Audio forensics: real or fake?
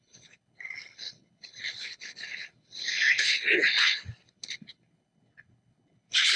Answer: fake